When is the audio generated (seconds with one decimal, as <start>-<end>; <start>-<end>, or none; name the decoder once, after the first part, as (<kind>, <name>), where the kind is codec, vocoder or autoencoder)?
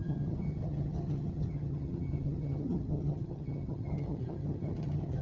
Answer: 0.0-5.2 (vocoder, HiFi-GAN)